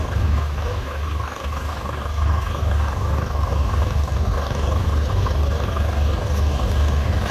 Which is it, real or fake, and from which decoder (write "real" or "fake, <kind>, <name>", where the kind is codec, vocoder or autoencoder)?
fake, codec, DAC